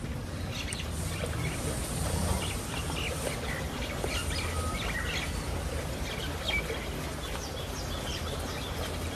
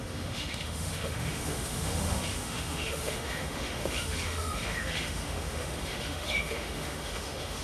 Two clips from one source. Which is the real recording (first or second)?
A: first